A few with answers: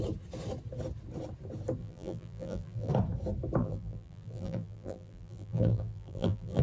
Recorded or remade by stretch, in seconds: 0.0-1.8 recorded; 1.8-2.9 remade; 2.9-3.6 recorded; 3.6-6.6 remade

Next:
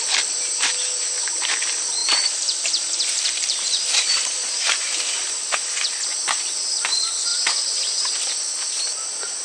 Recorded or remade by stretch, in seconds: 0.0-2.0 recorded; 2.0-5.3 remade; 5.3-7.3 recorded; 7.3-8.1 remade; 8.1-9.4 recorded

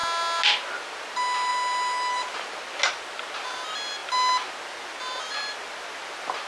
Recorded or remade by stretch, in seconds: 0.0-6.5 recorded